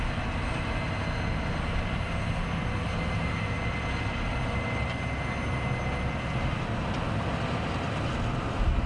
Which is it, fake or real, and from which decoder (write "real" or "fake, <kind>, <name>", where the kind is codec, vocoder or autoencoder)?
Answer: real